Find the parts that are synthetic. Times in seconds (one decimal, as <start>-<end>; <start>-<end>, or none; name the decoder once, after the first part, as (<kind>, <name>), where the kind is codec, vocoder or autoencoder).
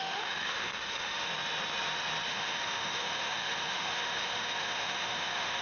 0.0-1.3 (autoencoder, DAC-VAE); 2.3-5.6